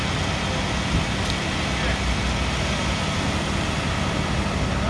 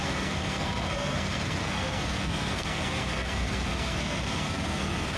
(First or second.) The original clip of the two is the first